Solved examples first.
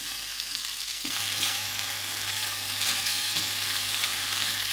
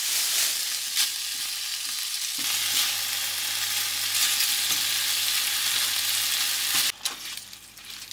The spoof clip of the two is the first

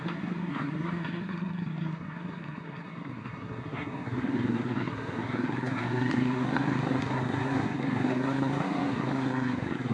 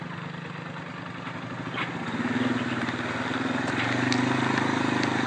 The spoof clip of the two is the first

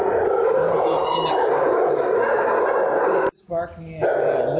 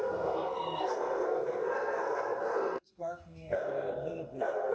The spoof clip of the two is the second